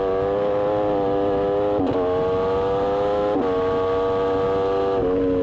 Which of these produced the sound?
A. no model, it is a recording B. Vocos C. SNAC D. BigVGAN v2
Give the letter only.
A